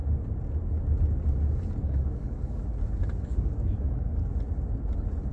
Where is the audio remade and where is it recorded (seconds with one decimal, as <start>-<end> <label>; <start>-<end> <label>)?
0.0-1.8 recorded; 1.8-2.6 remade; 2.6-3.2 recorded; 3.2-4.3 remade; 4.3-5.3 recorded